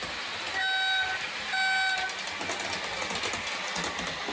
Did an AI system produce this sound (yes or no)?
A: no